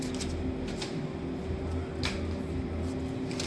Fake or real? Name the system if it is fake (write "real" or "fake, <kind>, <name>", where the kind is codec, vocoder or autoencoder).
real